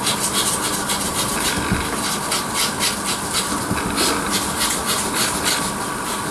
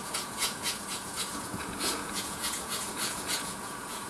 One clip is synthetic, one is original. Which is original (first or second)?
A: first